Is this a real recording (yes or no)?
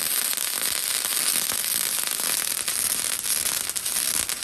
yes